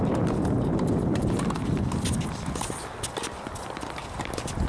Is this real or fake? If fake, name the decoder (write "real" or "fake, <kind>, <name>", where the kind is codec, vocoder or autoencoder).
real